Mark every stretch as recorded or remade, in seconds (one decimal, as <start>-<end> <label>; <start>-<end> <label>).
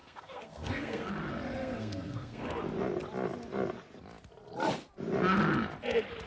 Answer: 0.0-1.1 remade; 1.1-1.6 recorded; 1.6-2.5 remade; 2.5-6.3 recorded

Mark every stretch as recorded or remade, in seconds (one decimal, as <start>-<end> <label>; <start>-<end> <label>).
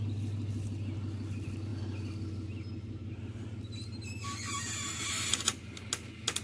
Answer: 0.0-6.4 recorded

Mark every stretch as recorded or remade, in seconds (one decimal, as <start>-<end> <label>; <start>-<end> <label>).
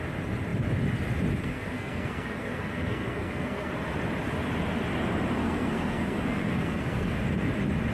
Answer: 0.0-1.4 recorded; 1.4-3.7 remade; 3.7-5.4 recorded; 5.4-7.2 remade; 7.2-7.9 recorded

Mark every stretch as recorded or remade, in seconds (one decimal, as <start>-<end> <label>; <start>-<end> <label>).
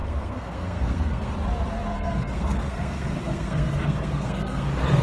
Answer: 0.0-1.3 remade; 1.3-1.9 recorded; 1.9-5.0 remade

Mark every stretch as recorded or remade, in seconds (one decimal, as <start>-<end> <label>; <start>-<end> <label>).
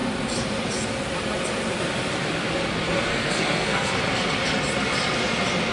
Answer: 0.0-3.1 recorded; 3.1-3.9 remade; 3.9-5.7 recorded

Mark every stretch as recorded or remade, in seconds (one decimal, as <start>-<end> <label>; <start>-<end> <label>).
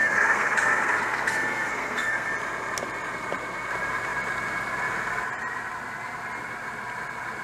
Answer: 0.0-2.3 remade; 2.3-7.4 recorded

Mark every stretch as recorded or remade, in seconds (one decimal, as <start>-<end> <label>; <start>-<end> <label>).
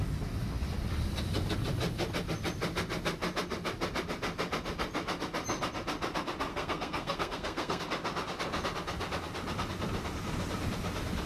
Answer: 0.0-6.5 recorded; 6.5-7.8 remade; 7.8-11.3 recorded